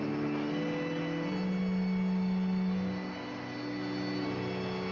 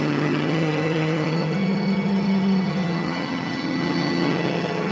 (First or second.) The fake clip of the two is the second